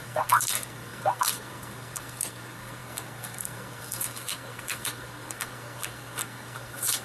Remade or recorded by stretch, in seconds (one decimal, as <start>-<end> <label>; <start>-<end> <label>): 0.0-7.0 remade